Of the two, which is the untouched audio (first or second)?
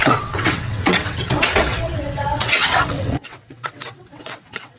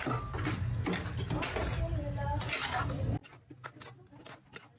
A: second